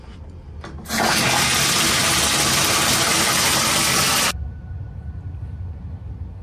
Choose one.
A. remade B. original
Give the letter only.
B